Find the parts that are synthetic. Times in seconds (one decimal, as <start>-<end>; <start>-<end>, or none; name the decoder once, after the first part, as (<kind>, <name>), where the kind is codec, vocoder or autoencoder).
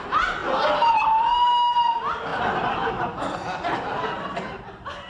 none